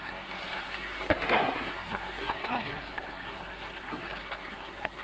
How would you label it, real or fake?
fake